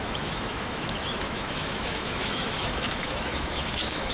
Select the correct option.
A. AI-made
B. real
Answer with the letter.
A